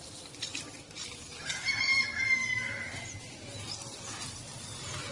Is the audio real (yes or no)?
yes